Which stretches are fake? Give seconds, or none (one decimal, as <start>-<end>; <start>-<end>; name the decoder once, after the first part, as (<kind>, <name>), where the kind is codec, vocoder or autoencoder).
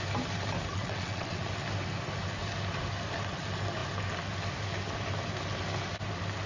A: 0.7-1.5 (vocoder, WaveNeXt)